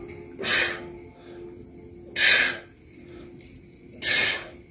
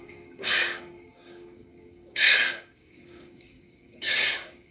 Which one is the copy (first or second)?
second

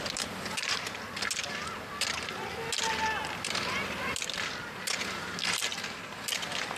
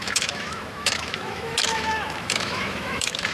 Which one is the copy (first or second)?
second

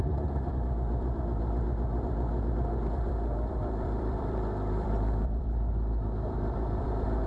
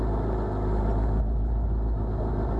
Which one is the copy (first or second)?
first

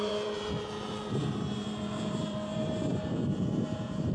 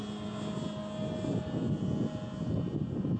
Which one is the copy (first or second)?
first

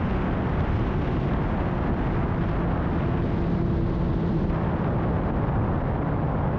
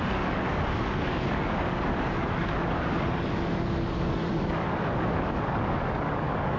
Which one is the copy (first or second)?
second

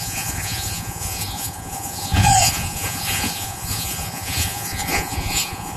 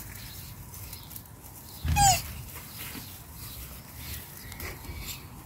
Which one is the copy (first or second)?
first